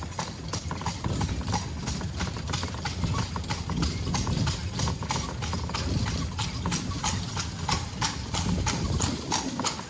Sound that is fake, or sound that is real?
real